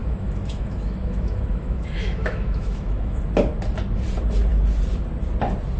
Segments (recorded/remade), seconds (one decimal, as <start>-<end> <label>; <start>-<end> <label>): 0.0-3.2 remade; 3.2-5.8 recorded